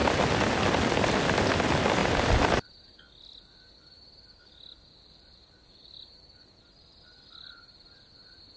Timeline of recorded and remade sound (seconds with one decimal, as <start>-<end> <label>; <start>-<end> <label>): 0.0-8.6 recorded